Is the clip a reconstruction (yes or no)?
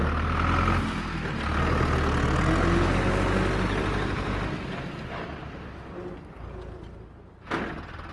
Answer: no